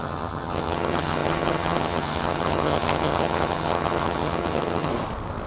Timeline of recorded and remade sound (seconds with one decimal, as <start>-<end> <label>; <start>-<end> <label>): 0.0-4.9 remade; 4.9-5.5 recorded

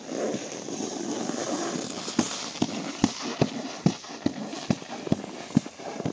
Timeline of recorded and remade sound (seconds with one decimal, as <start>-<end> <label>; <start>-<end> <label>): 0.0-6.1 recorded

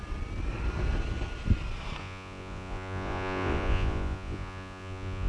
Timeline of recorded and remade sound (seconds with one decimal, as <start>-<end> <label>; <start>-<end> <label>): 0.0-2.0 recorded; 2.0-5.3 remade

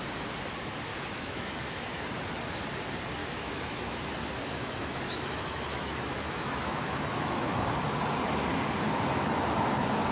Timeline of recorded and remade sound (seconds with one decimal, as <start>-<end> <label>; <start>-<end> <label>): 0.0-0.9 recorded; 0.9-2.0 remade; 2.0-3.2 recorded; 3.2-4.1 remade; 4.1-4.6 recorded; 4.6-7.6 remade; 7.6-10.1 recorded

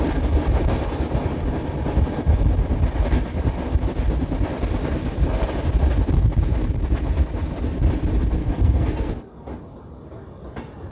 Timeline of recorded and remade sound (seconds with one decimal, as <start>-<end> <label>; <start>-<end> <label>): 0.0-8.4 recorded; 8.4-9.1 remade; 9.1-10.9 recorded

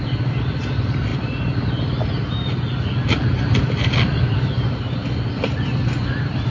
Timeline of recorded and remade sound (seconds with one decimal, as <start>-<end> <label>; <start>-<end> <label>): 0.0-6.5 recorded

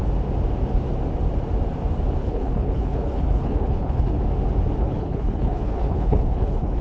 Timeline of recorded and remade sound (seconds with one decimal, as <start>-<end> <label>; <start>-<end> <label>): 0.0-2.2 recorded; 2.2-4.2 remade; 4.2-4.8 recorded; 4.8-6.8 remade

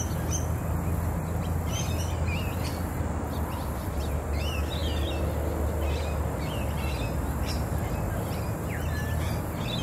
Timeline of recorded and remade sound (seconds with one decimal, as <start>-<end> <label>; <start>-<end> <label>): 0.0-9.8 recorded